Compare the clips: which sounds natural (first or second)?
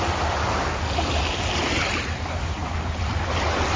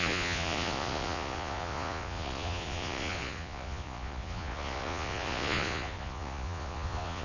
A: first